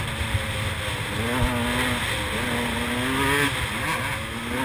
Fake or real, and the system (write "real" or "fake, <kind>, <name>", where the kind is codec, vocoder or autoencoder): real